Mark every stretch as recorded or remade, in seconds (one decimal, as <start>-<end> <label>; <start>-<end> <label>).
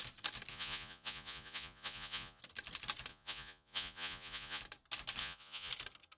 0.0-0.5 recorded; 0.5-2.4 remade; 2.4-3.1 recorded; 3.1-4.6 remade; 4.6-5.2 recorded; 5.2-5.7 remade; 5.7-6.2 recorded